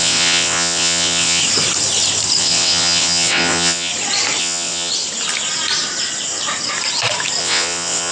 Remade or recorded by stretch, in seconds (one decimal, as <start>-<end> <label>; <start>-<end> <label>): 0.0-1.4 remade; 1.4-2.4 recorded; 2.4-3.9 remade; 3.9-4.4 recorded; 4.4-4.9 remade; 4.9-7.4 recorded; 7.4-8.1 remade